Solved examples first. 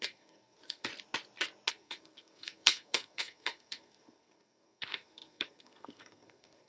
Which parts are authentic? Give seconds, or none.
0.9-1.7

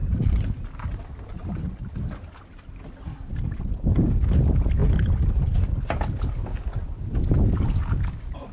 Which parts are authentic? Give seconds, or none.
3.3-8.5

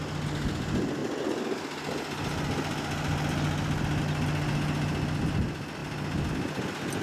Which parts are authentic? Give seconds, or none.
0.0-7.0

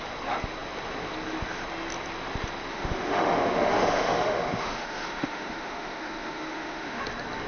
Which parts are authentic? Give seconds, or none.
0.0-2.7; 7.0-7.5

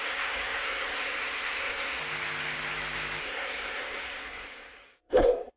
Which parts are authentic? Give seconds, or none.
2.0-3.2

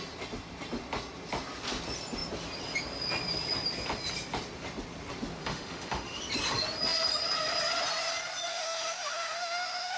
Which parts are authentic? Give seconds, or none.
0.0-5.4; 6.2-8.5

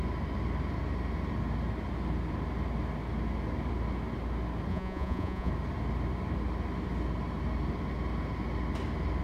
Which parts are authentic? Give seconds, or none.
0.0-4.7; 5.5-9.2

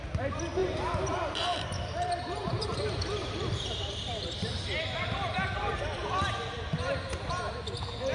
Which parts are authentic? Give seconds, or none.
0.0-0.6; 2.8-3.2; 4.5-8.1